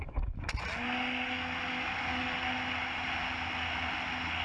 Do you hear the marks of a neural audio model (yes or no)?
no